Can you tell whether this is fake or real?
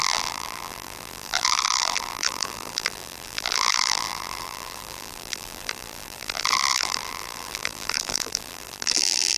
fake